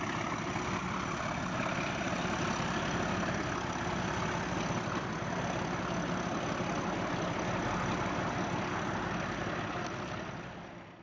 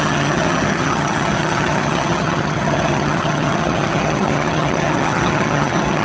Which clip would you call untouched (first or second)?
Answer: first